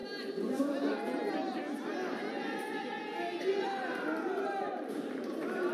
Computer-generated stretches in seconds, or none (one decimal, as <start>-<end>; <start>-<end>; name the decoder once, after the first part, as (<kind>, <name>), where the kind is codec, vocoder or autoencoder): none